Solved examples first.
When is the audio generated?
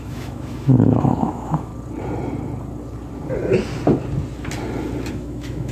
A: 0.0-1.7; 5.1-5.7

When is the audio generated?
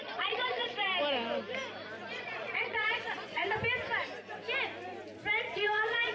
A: 0.0-0.9; 2.1-3.4; 5.4-6.1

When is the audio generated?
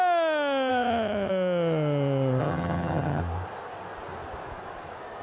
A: 0.7-1.3; 2.4-3.2